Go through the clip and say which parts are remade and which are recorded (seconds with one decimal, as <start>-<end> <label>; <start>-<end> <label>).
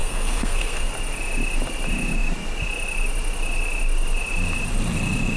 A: 0.0-0.9 remade; 0.9-5.4 recorded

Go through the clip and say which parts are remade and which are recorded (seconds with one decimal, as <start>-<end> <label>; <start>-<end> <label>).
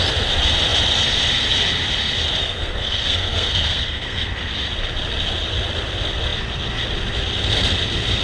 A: 0.0-2.4 recorded; 2.4-4.3 remade; 4.3-8.2 recorded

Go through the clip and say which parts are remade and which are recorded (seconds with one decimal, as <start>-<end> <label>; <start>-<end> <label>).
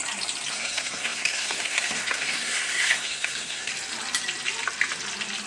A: 0.0-0.5 recorded; 0.5-3.7 remade; 3.7-5.5 recorded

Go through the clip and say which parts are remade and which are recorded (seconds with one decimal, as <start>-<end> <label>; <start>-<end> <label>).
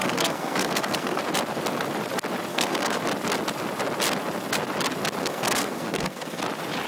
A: 0.0-1.2 remade; 1.2-2.5 recorded; 2.5-3.0 remade; 3.0-5.2 recorded; 5.2-6.4 remade; 6.4-6.9 recorded